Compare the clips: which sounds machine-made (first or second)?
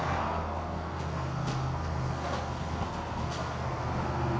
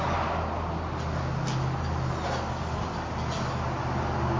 first